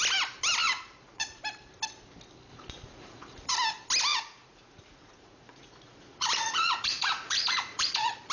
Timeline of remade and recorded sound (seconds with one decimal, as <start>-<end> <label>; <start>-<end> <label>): 0.0-0.6 recorded; 0.6-1.4 remade; 1.4-2.5 recorded; 2.5-3.5 remade; 3.5-4.1 recorded; 4.1-8.3 remade